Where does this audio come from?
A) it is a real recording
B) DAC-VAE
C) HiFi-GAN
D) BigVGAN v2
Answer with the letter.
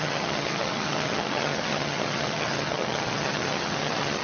C